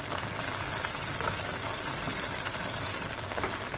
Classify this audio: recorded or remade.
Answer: recorded